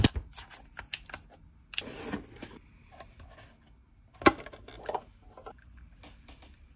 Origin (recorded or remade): recorded